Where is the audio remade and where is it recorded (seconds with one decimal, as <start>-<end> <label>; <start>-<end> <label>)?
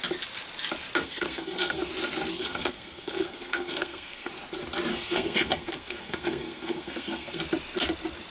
0.0-1.0 recorded; 1.0-1.9 remade; 1.9-2.3 recorded; 2.3-4.3 remade; 4.3-4.9 recorded; 4.9-7.4 remade; 7.4-8.3 recorded